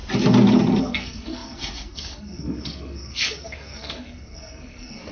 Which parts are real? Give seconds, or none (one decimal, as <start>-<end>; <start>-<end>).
0.0-0.8